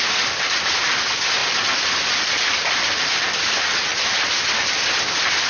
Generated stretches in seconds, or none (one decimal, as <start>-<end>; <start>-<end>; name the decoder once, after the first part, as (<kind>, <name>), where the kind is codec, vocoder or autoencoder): none